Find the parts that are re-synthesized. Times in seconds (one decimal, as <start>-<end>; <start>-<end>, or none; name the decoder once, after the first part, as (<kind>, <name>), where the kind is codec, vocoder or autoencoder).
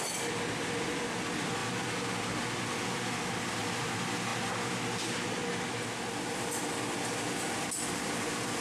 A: none